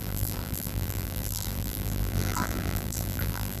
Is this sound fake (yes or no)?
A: yes